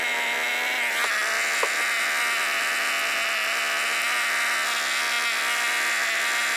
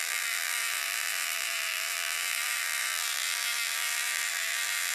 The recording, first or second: first